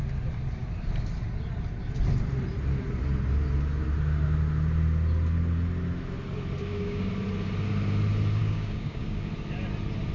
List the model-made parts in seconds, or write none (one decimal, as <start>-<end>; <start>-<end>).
6.6-7.1; 8.4-9.3